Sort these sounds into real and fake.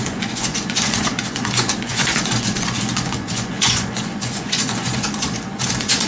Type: fake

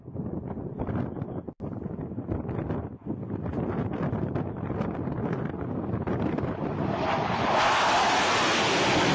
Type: real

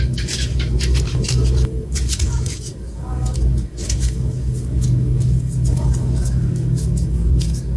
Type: fake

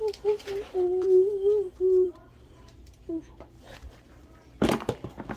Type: fake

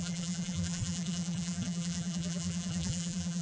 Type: fake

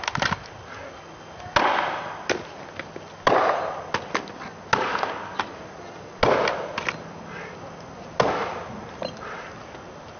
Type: real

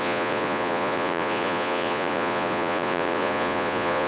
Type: fake